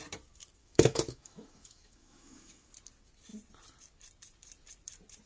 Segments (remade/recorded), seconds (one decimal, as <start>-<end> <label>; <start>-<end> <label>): 0.0-0.6 recorded; 0.6-2.7 remade; 2.7-5.3 recorded